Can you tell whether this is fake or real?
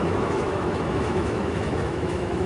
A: fake